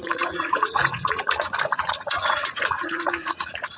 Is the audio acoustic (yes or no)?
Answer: no